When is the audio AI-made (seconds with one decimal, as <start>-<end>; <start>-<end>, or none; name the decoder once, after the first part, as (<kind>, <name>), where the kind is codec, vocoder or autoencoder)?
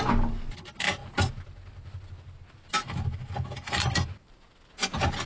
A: none